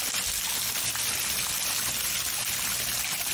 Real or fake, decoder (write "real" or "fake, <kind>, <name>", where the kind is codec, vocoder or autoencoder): real